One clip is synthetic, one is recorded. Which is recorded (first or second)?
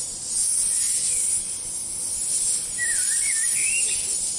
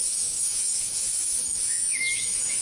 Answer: first